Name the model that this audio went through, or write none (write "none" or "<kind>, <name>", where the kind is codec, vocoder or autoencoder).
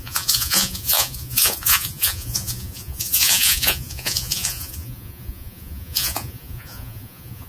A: vocoder, Vocos